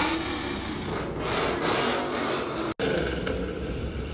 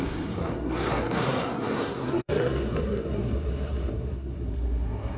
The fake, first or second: second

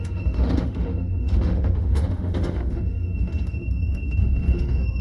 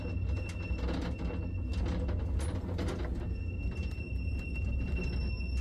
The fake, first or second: first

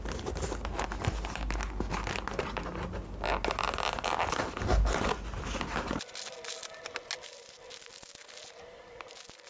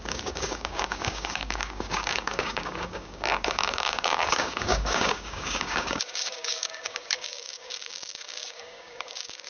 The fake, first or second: second